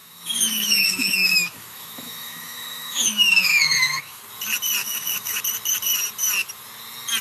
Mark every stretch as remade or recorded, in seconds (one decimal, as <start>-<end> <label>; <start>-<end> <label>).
0.0-4.2 remade; 4.2-4.8 recorded; 4.8-5.4 remade; 5.4-7.2 recorded